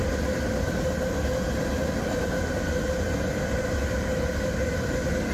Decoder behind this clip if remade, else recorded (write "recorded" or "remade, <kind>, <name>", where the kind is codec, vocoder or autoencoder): recorded